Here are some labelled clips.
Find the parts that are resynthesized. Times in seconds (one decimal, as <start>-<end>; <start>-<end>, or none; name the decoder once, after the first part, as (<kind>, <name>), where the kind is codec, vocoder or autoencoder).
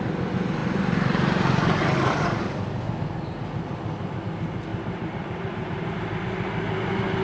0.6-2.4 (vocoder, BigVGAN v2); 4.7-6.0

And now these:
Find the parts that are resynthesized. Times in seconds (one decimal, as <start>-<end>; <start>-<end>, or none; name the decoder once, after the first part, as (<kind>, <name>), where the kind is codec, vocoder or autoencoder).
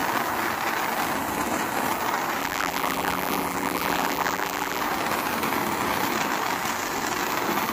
2.4-4.8 (vocoder, BigVGAN v2)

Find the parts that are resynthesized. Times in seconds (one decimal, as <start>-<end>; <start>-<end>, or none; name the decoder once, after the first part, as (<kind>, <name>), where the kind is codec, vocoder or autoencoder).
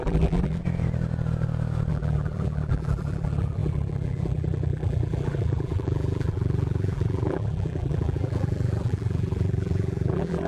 0.0-0.6 (vocoder, BigVGAN v2); 1.9-10.5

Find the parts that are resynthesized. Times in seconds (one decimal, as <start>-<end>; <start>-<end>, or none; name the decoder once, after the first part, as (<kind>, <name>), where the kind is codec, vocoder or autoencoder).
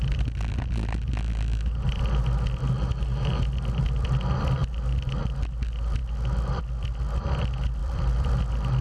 7.8-8.4 (vocoder, BigVGAN v2)